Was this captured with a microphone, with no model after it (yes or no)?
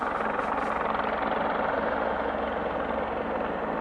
yes